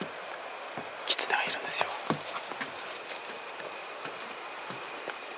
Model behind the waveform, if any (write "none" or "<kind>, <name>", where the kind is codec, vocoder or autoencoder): none